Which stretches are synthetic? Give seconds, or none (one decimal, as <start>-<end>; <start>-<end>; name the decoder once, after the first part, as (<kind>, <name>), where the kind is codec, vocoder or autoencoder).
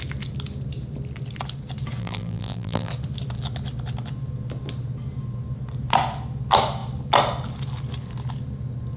2.0-2.9 (vocoder, BigVGAN v2)